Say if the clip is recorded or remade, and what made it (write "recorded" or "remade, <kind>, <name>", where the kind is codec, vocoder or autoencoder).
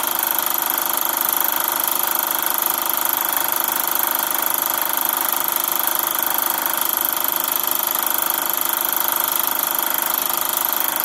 recorded